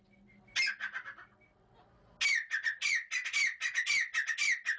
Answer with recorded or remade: recorded